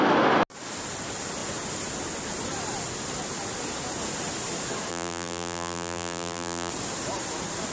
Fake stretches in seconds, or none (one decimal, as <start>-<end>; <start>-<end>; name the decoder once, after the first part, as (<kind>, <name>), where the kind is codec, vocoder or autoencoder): 4.9-6.7 (vocoder, BigVGAN v2)